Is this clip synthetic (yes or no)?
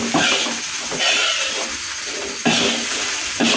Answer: no